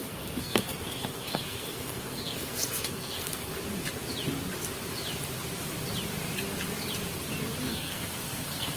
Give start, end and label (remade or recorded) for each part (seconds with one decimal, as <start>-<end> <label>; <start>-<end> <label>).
0.0-3.5 remade; 3.5-7.6 recorded; 7.6-8.8 remade